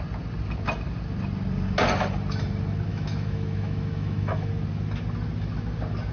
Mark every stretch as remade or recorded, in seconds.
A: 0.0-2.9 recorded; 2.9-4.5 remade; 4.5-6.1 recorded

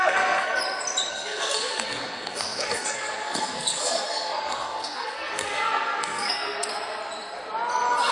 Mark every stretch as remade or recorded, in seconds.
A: 0.0-0.6 remade; 0.6-1.1 recorded; 1.1-6.7 remade; 6.7-8.1 recorded

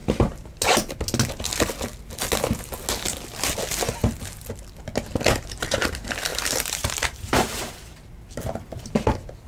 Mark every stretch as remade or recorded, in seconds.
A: 0.0-0.5 remade; 0.5-4.0 recorded; 4.0-4.5 remade; 4.5-6.3 recorded; 6.3-8.9 remade; 8.9-9.5 recorded

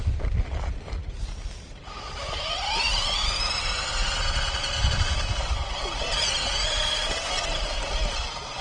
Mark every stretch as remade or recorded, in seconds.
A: 0.0-8.6 recorded

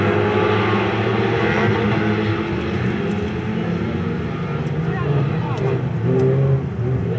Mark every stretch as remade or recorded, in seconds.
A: 0.0-7.2 recorded